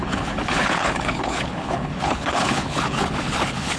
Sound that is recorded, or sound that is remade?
remade